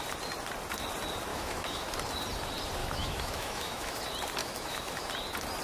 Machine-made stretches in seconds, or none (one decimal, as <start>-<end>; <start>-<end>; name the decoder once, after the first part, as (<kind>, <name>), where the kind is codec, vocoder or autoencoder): 1.3-1.9 (autoencoder, DAC-VAE); 2.8-4.0; 4.4-5.1